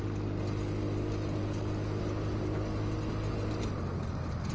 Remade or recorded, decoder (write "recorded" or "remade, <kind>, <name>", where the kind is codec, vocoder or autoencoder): recorded